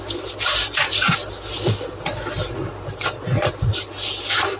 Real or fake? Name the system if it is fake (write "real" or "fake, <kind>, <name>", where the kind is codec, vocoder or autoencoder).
real